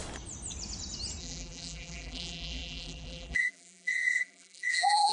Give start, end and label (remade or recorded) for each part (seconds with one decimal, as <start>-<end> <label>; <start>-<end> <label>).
0.0-1.2 recorded; 1.2-5.1 remade